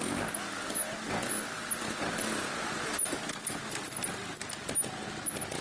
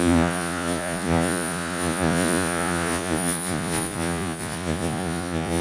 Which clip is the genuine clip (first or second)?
first